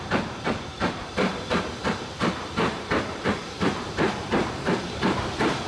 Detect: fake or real fake